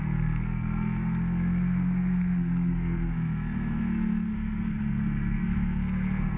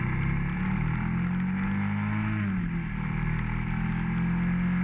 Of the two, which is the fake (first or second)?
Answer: first